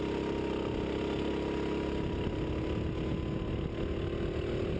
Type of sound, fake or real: real